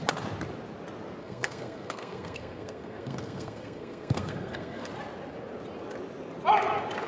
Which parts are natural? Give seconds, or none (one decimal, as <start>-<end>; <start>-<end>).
0.0-1.2; 4.9-7.1